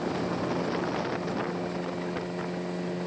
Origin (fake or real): real